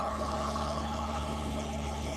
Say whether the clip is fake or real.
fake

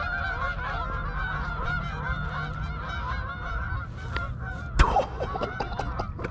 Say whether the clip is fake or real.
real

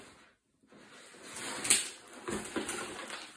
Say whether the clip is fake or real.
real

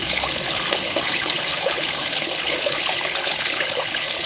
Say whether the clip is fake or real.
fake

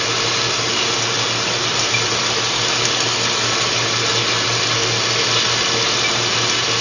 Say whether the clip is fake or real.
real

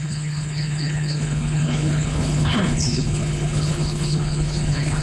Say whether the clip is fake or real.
fake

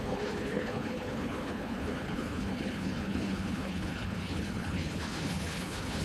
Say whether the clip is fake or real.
fake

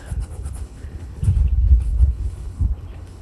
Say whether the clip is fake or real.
fake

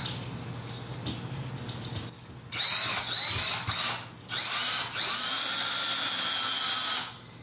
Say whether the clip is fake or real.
real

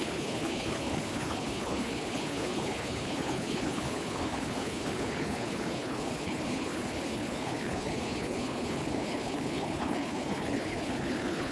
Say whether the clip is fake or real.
fake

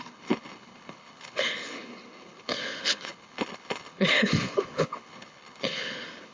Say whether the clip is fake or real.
fake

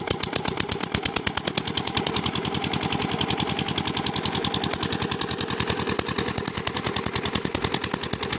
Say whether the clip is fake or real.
real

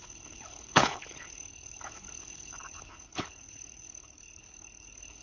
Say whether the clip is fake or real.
fake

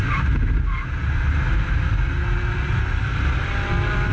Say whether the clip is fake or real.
real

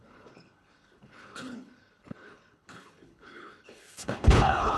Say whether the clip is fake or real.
fake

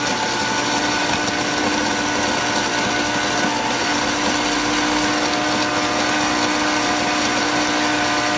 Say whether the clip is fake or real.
real